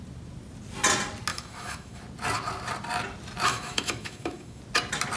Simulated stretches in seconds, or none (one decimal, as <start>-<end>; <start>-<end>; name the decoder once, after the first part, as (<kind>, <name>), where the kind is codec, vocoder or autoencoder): 1.3-2.0 (autoencoder, DAC-VAE); 3.5-4.6